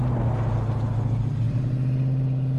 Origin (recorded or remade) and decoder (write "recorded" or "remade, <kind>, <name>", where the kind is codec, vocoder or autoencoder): recorded